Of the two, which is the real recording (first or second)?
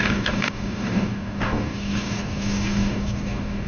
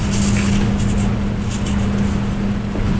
second